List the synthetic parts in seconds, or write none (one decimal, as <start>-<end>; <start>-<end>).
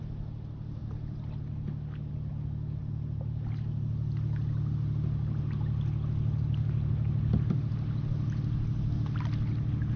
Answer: none